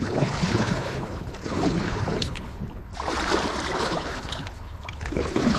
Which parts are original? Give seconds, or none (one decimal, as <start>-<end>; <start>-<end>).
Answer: 2.9-3.8